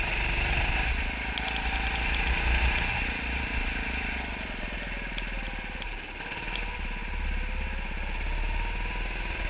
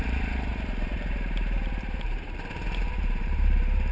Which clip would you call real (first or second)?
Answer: first